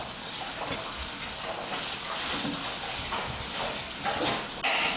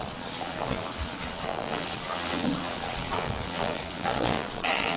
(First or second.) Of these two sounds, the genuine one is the first